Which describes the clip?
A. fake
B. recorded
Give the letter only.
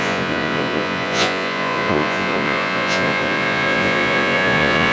A